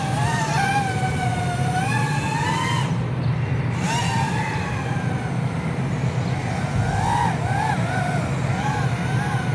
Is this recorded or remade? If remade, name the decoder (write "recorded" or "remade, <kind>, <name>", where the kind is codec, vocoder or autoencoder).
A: recorded